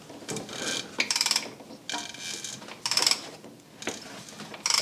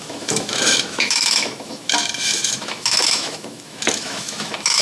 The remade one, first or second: second